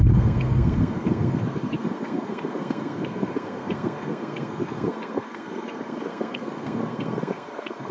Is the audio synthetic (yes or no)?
yes